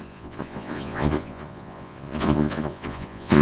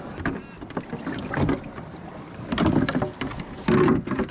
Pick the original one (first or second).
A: second